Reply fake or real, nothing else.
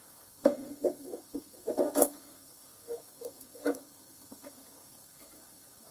fake